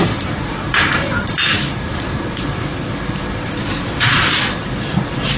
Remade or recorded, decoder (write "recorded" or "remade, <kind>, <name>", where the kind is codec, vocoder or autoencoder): remade, vocoder, BigVGAN v2